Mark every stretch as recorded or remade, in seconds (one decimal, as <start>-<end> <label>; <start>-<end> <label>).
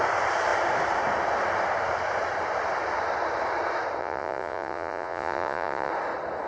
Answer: 0.0-4.0 recorded; 4.0-5.9 remade; 5.9-6.5 recorded